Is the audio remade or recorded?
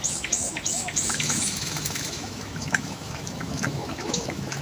remade